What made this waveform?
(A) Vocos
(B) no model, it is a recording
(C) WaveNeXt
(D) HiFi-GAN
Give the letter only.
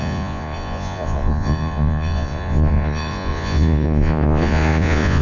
A